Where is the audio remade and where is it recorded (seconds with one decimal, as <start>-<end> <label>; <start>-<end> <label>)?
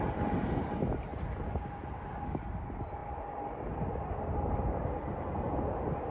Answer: 0.0-6.1 recorded